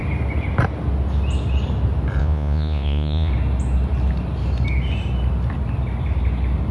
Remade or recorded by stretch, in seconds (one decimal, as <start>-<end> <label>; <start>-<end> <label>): 0.0-2.2 recorded; 2.2-3.3 remade; 3.3-6.7 recorded